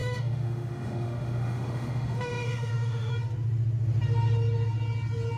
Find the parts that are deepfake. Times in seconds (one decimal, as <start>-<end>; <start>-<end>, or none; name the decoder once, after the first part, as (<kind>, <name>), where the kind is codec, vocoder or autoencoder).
0.0-3.1 (autoencoder, DAC-VAE)